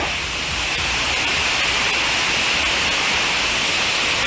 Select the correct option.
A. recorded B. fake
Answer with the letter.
A